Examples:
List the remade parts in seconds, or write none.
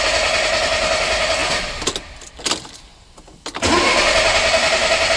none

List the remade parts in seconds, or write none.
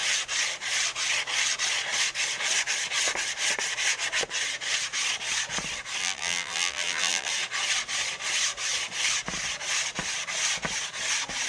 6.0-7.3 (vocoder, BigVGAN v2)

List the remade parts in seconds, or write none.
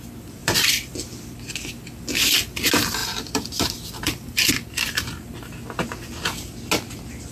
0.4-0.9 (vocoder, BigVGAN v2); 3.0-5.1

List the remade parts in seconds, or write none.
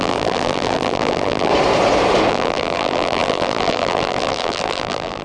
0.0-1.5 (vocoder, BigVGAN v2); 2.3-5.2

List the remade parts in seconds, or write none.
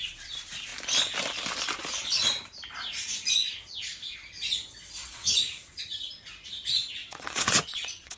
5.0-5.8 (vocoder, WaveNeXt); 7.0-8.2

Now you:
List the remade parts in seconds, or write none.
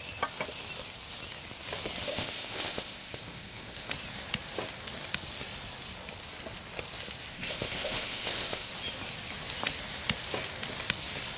2.1-3.9 (codec, ZipCodec); 7.3-8.7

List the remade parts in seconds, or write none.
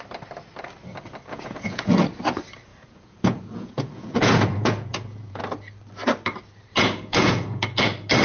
1.3-1.9 (vocoder, Vocos); 2.7-5.4; 6.7-7.6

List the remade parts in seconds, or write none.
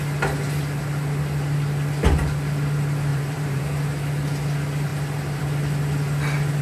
3.1-3.6 (vocoder, BigVGAN v2)